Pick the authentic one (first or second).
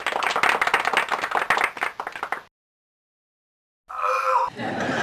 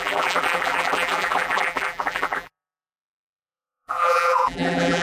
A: first